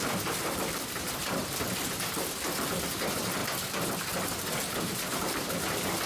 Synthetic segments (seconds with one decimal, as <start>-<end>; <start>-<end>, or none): 0.0-1.4; 2.4-3.4; 4.7-6.1